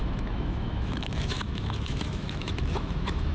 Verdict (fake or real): fake